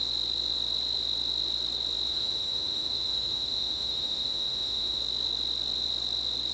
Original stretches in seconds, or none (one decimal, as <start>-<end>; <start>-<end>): 0.0-2.1; 5.0-6.5